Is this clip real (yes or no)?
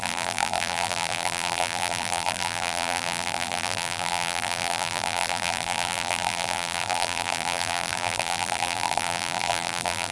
no